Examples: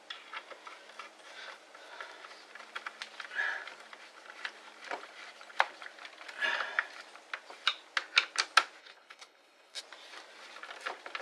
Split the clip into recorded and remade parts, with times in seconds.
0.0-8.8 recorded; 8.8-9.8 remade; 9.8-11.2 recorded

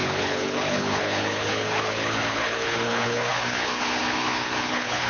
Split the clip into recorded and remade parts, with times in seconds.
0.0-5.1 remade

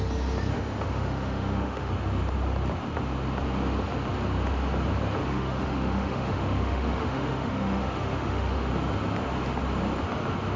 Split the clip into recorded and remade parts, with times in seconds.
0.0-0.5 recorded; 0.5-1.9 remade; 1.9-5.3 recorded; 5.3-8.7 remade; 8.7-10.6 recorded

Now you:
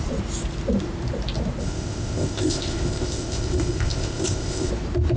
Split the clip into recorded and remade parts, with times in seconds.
0.0-1.6 recorded; 1.6-4.7 remade; 4.7-5.2 recorded

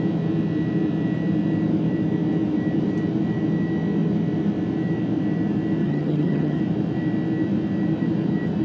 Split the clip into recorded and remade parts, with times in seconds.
0.0-5.8 recorded; 5.8-6.6 remade; 6.6-8.6 recorded